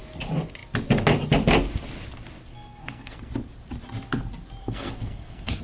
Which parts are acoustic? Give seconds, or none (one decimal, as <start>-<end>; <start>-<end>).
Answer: 0.0-2.5; 3.3-4.6